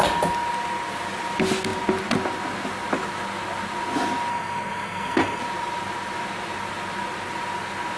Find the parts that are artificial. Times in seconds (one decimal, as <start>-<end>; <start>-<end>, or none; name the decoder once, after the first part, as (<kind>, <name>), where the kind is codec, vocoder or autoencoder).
4.3-5.4 (codec, SNAC)